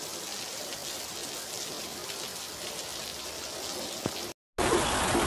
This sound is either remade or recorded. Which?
recorded